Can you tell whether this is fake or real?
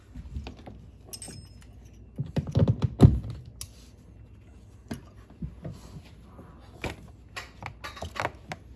real